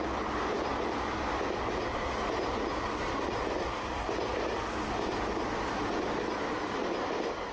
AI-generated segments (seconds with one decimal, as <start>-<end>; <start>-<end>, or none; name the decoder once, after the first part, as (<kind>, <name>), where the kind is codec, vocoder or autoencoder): none